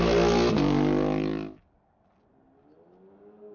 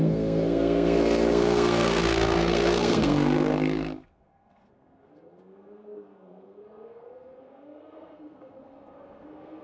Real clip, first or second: first